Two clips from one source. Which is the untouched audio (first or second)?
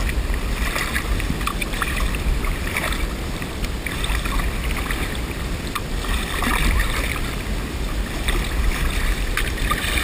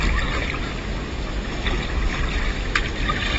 second